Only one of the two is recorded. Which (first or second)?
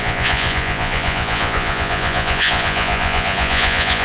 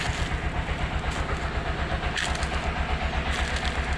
second